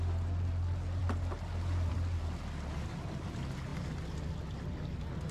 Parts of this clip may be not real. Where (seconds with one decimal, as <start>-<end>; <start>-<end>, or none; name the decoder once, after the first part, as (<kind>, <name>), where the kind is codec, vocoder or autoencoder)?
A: none